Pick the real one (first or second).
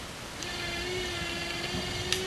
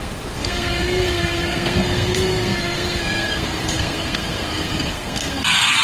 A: first